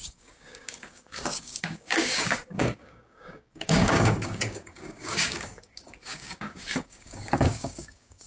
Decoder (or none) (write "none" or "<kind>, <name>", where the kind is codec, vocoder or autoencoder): codec, DAC